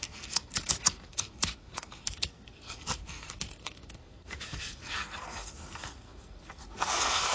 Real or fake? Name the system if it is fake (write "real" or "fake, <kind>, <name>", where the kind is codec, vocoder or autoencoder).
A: fake, codec, SNAC